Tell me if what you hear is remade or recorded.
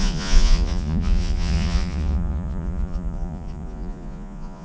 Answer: remade